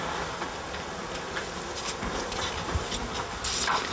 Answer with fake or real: real